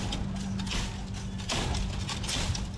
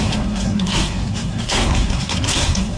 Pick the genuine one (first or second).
first